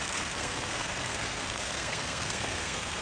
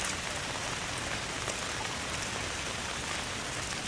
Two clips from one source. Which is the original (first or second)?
second